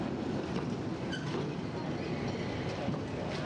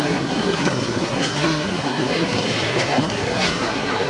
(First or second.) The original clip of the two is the first